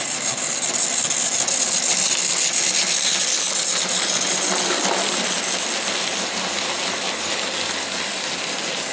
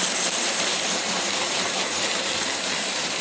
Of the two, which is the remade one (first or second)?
second